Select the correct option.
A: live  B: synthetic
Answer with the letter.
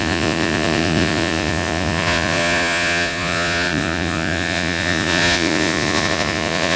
B